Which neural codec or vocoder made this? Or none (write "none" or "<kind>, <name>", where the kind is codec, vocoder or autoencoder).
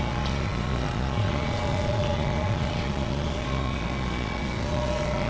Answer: vocoder, Vocos